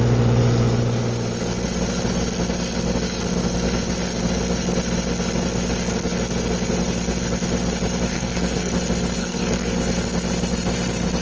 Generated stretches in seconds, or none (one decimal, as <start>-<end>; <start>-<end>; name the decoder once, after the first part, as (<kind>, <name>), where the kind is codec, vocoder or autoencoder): 8.1-8.7 (codec, SNAC); 9.2-9.8